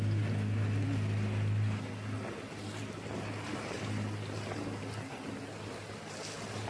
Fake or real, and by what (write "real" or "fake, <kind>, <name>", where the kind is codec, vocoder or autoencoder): real